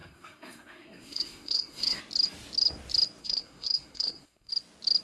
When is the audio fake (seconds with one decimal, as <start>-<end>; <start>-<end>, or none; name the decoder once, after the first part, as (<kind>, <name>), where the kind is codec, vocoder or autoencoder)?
0.0-2.0 (codec, SNAC); 3.2-4.5